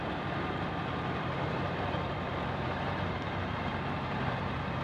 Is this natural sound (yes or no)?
no